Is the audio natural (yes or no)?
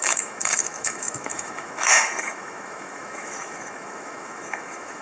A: no